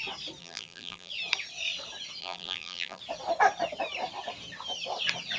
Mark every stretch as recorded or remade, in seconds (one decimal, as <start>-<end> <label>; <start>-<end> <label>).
0.0-0.4 recorded; 0.4-1.1 remade; 1.1-2.2 recorded; 2.2-3.0 remade; 3.0-5.4 recorded